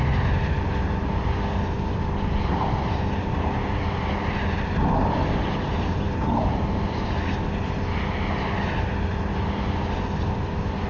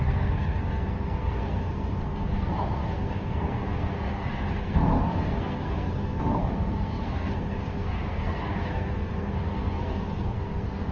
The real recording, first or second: first